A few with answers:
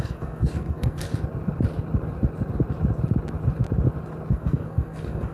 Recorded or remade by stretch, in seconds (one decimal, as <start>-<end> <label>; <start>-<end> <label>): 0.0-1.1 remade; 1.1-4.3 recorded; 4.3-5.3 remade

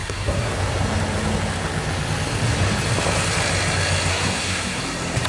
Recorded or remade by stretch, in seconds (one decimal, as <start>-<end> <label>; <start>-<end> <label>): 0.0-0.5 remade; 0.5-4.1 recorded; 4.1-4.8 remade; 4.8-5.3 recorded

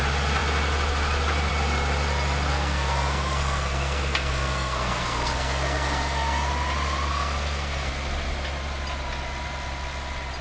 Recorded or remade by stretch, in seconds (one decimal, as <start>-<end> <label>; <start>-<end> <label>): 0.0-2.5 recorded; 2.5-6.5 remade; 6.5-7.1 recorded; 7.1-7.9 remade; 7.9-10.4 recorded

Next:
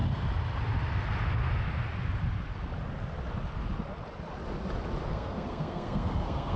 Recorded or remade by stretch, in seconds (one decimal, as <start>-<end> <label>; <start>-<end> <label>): 0.0-5.1 recorded; 5.1-6.6 remade